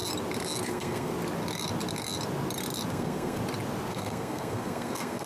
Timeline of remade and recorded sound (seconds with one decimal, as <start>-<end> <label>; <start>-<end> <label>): 0.0-0.7 recorded; 0.7-1.1 remade; 1.1-2.9 recorded; 2.9-3.4 remade; 3.4-3.9 recorded; 3.9-5.3 remade